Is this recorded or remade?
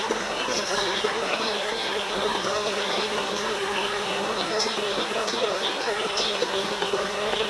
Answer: remade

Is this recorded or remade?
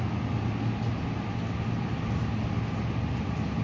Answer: recorded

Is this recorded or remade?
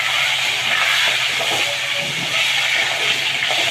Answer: recorded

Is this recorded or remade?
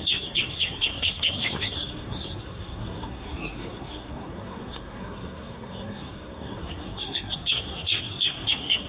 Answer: remade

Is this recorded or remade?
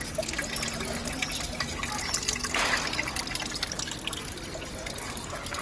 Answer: recorded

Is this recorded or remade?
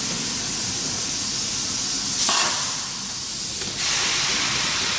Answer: recorded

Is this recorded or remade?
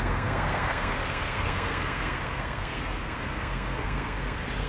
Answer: remade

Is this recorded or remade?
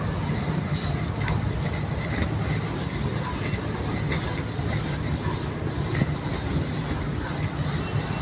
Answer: recorded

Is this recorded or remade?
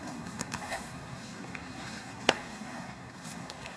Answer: remade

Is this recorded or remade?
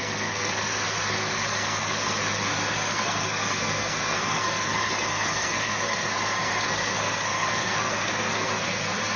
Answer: remade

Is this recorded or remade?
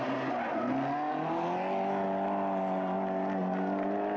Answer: recorded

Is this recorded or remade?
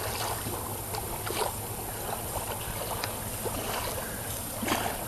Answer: recorded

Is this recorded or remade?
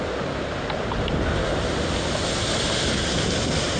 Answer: recorded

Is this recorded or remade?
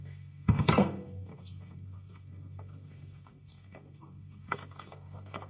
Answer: remade